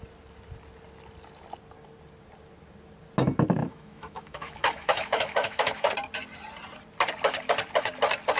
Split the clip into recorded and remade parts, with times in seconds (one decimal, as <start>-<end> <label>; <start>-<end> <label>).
0.0-3.6 recorded; 3.6-5.9 remade; 5.9-8.4 recorded